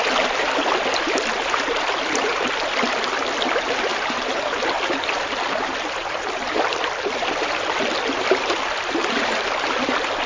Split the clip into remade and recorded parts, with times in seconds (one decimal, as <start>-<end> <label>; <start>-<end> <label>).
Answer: 0.0-3.9 recorded; 3.9-4.6 remade; 4.6-10.3 recorded